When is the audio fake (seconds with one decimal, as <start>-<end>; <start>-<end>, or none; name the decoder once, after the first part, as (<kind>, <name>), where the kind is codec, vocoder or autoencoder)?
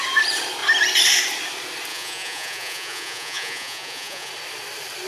1.9-4.3 (vocoder, Vocos)